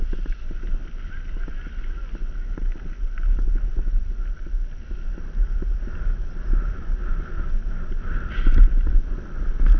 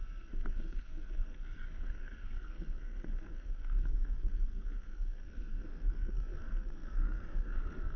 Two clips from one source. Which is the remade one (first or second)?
second